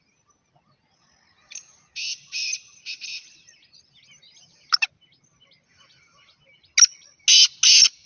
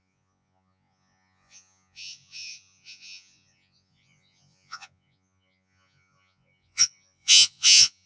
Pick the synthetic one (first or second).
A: second